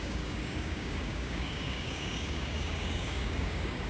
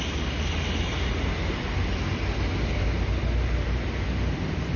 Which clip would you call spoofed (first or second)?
first